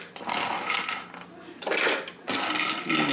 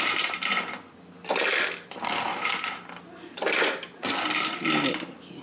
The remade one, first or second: second